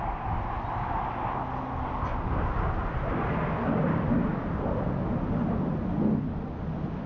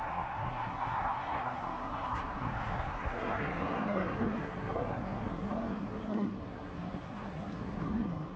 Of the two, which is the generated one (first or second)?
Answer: second